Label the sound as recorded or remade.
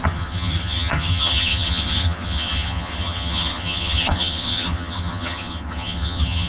remade